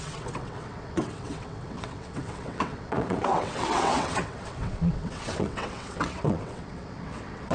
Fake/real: fake